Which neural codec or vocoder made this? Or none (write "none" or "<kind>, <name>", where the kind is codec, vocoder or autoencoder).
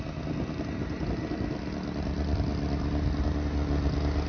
none